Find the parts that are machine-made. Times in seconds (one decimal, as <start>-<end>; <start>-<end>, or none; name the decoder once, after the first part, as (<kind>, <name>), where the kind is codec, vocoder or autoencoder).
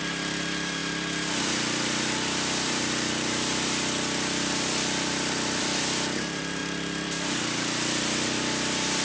0.0-9.0 (vocoder, BigVGAN v2)